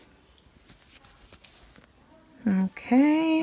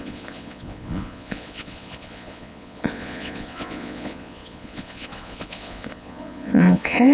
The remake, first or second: second